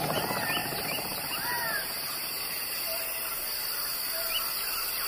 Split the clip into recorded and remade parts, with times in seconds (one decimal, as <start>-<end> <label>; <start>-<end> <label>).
0.0-0.6 recorded; 0.6-2.8 remade; 2.8-5.1 recorded